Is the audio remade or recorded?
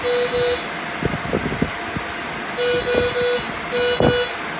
recorded